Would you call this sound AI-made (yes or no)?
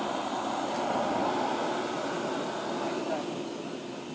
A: no